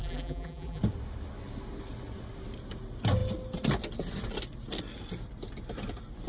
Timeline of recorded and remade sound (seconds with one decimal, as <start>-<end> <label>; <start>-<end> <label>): 0.0-0.8 remade; 0.8-6.3 recorded